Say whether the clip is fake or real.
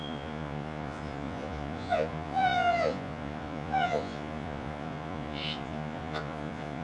fake